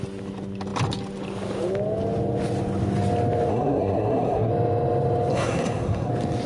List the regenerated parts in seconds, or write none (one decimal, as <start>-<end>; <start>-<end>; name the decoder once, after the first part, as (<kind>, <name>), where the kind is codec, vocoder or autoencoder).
3.5-4.5 (codec, SNAC); 5.3-6.1